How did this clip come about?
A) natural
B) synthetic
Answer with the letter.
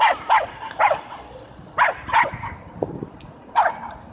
A